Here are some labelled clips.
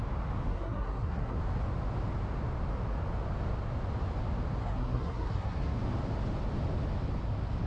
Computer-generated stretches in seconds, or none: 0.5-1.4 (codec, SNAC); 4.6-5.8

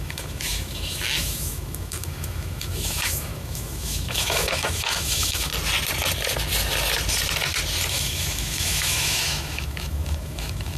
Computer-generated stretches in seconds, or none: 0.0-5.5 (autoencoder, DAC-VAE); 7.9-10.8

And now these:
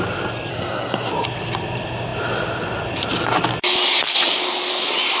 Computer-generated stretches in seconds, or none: 0.5-1.1 (codec, SNAC)

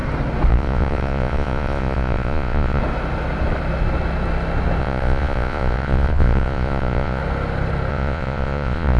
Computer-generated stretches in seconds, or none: 0.5-2.8 (vocoder, Vocos); 4.8-7.2; 7.9-9.0